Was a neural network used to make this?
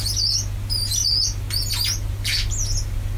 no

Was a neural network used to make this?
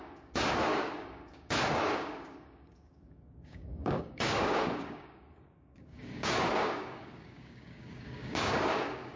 yes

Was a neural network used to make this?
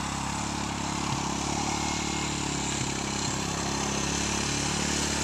no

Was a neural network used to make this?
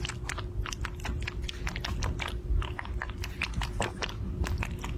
no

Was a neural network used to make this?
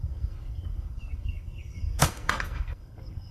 yes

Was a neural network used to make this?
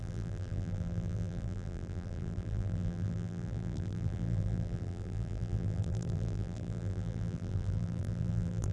yes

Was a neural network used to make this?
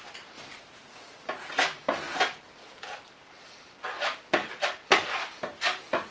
no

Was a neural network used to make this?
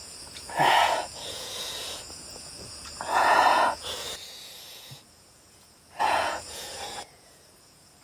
yes